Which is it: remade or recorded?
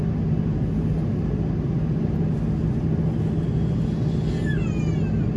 recorded